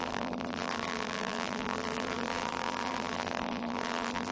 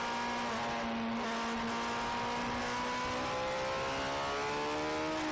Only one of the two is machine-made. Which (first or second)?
first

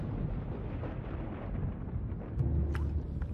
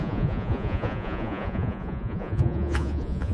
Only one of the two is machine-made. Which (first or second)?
second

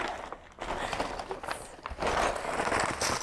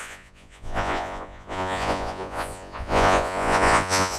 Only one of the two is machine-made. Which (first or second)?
second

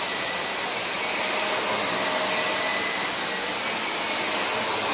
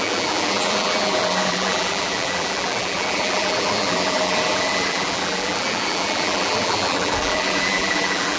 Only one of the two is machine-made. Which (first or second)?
second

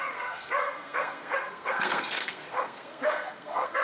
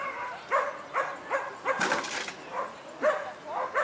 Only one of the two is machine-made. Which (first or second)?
first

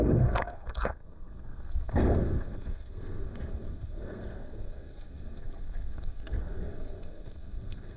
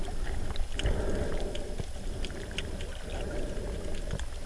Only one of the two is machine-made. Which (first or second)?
first